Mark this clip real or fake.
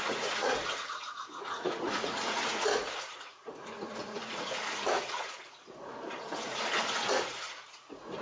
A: fake